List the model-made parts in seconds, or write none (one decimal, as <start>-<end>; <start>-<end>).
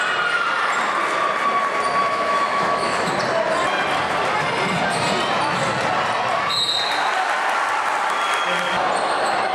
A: 2.0-3.1